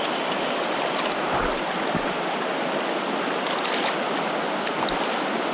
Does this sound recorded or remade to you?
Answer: recorded